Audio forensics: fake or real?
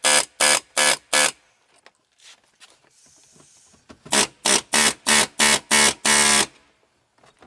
real